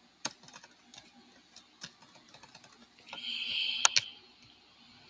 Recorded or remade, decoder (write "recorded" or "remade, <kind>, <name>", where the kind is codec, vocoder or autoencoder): recorded